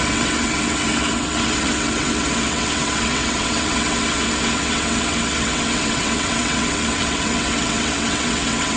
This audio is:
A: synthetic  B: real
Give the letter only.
A